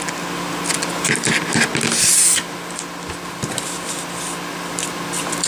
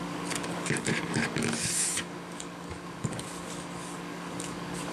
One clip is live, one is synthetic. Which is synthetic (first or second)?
second